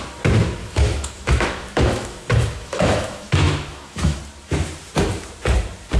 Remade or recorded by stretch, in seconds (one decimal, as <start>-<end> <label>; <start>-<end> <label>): 0.0-0.6 recorded; 0.6-4.2 remade; 4.2-6.0 recorded